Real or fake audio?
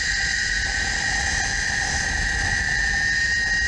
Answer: real